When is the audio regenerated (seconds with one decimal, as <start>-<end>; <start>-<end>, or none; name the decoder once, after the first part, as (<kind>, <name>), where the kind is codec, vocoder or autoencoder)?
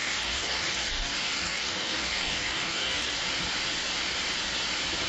0.0-3.1 (codec, DAC)